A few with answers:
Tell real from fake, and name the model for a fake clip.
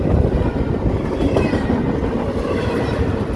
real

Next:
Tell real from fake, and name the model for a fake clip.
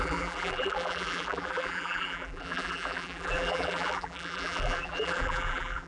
fake, vocoder, BigVGAN v2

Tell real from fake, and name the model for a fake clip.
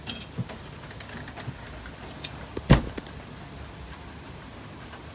real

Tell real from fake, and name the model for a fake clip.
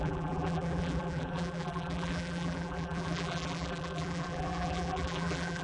fake, vocoder, BigVGAN v2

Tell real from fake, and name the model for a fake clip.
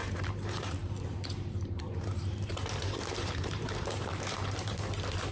fake, vocoder, BigVGAN v2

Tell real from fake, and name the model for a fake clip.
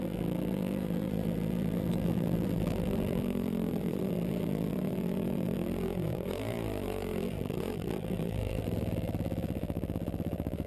fake, vocoder, BigVGAN v2